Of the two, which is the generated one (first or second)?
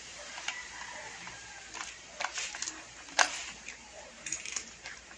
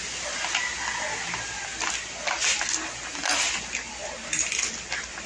first